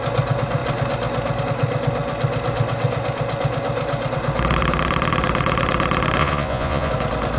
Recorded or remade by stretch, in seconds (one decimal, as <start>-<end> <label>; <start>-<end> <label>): 0.0-6.2 recorded; 6.2-6.9 remade; 6.9-7.4 recorded